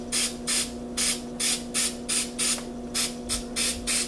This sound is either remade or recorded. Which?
recorded